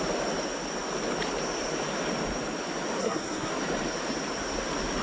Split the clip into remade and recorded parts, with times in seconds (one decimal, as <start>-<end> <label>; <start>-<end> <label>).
0.0-3.0 recorded; 3.0-3.5 remade; 3.5-5.0 recorded